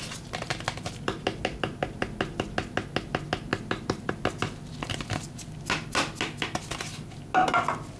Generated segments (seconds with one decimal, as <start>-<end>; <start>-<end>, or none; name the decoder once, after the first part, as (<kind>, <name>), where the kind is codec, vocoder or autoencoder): none